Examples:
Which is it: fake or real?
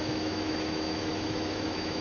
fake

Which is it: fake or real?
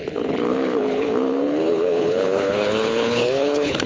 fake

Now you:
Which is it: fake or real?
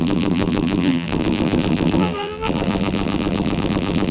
fake